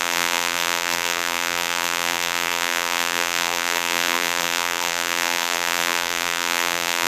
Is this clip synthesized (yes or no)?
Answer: yes